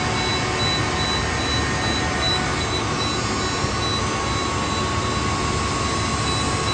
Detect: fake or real real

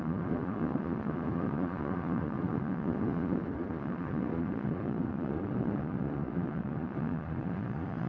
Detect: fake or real fake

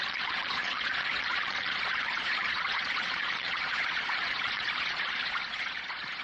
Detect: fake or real fake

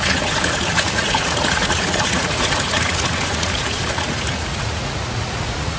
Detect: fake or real fake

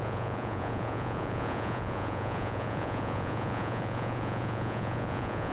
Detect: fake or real fake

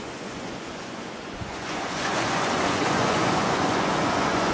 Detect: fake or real fake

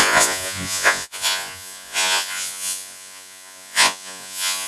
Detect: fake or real fake